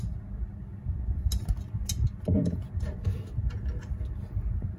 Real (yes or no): yes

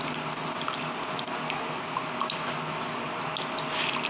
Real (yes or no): yes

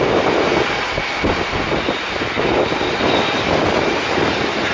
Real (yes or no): yes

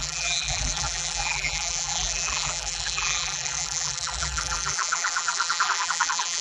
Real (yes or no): no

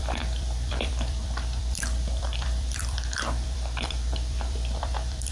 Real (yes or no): no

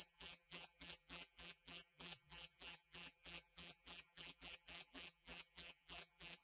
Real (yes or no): no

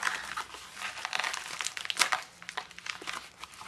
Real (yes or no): yes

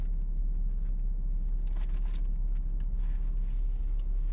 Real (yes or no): yes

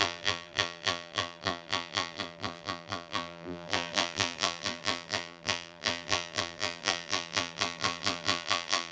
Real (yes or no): no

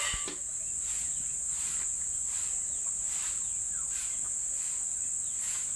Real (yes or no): yes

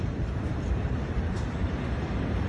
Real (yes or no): no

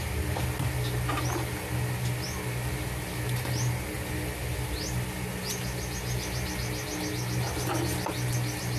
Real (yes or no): yes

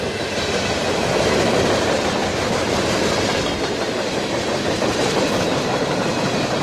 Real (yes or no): no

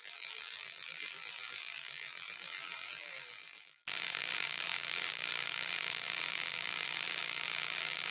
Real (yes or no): no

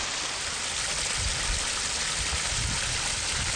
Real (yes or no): yes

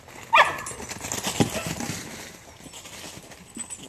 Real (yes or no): yes